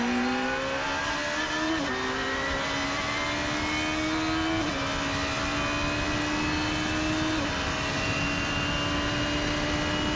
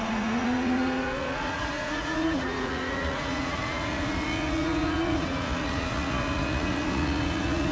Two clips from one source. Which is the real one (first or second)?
first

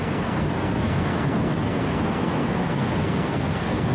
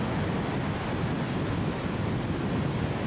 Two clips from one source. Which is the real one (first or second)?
second